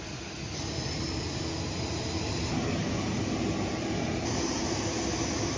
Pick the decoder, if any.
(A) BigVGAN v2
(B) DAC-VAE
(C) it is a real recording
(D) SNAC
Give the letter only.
C